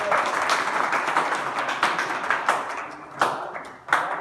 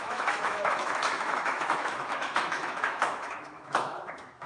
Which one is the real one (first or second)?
first